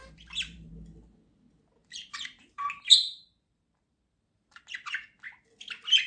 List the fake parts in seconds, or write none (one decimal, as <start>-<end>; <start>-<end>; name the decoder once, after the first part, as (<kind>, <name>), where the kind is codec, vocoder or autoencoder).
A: 0.0-0.7 (vocoder, BigVGAN v2); 1.8-4.6